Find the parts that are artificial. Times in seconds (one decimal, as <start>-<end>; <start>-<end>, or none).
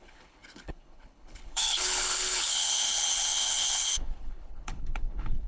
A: 0.0-5.5